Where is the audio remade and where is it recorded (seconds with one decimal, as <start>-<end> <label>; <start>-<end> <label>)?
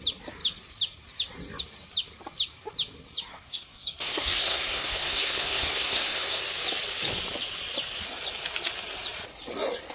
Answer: 0.0-3.3 recorded; 3.3-6.4 remade; 6.4-9.9 recorded